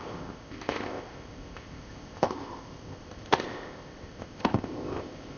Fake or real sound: fake